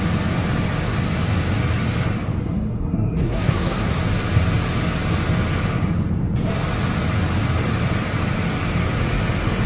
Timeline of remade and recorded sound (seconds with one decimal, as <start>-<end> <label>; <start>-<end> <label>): 0.0-2.4 recorded; 2.4-4.0 remade; 4.0-9.7 recorded